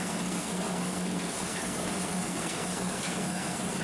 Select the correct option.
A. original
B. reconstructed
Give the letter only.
B